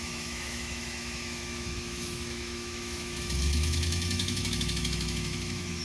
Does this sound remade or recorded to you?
remade